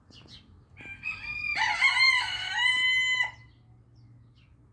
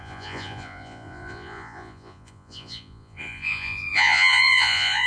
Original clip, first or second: first